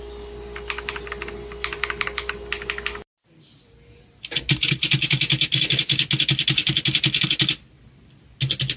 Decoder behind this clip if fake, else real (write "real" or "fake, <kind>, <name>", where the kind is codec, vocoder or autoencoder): real